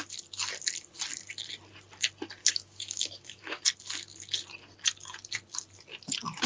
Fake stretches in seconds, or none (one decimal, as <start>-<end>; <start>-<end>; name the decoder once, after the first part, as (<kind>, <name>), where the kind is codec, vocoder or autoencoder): 2.4-3.6 (autoencoder, DAC-VAE)